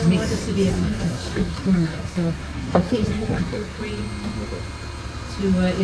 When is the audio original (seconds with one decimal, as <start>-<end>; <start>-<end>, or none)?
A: 0.0-0.7; 3.8-5.8